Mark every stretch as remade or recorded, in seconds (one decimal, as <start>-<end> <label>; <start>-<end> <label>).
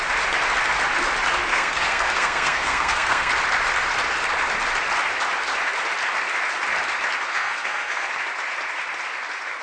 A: 0.0-1.5 recorded; 1.5-3.3 remade; 3.3-7.3 recorded; 7.3-8.1 remade; 8.1-9.6 recorded